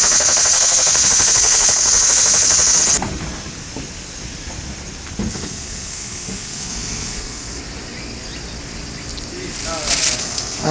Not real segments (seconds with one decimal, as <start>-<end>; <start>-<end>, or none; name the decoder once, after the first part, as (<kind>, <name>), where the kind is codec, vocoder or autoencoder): 0.0-2.8 (codec, SNAC); 5.3-7.6; 10.2-10.7